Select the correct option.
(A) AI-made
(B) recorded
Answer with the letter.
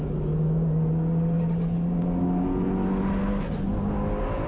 B